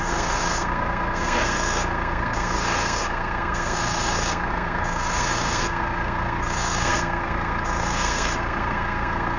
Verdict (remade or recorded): remade